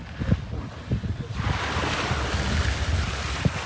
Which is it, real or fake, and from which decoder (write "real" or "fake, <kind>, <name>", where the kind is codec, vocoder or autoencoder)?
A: real